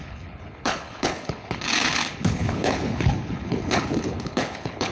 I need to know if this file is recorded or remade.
remade